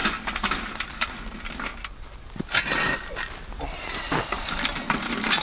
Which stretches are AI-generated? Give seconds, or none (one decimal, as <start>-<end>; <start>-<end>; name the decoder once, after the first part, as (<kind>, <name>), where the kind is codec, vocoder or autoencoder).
0.0-1.7 (vocoder, BigVGAN v2); 2.3-5.4